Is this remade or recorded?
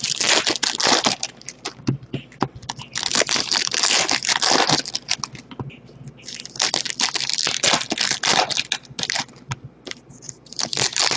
recorded